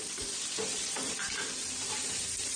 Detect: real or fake fake